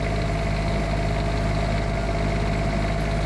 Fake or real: real